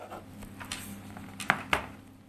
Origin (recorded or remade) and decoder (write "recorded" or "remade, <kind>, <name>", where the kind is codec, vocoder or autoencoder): recorded